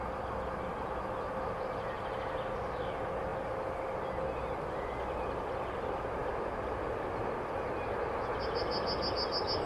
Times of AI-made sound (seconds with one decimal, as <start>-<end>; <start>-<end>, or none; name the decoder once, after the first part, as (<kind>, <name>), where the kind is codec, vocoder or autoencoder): none